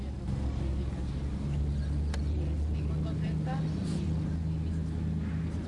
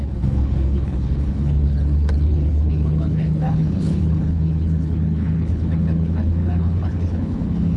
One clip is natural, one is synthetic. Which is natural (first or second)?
first